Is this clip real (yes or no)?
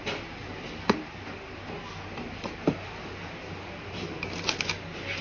yes